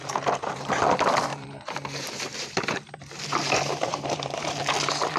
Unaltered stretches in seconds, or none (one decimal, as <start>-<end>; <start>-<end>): 0.8-1.3; 4.4-5.2